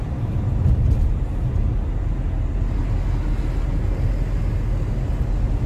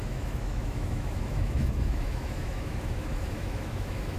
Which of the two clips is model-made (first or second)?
second